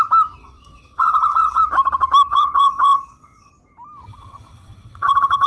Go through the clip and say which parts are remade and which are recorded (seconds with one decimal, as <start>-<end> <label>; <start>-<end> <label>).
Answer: 0.0-0.4 recorded; 0.4-1.6 remade; 1.6-2.3 recorded; 2.3-3.5 remade; 3.5-4.1 recorded; 4.1-5.5 remade